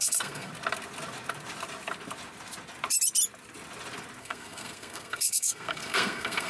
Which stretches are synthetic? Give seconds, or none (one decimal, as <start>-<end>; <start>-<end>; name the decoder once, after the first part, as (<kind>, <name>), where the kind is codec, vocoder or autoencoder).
0.0-0.5 (codec, SNAC); 4.2-6.5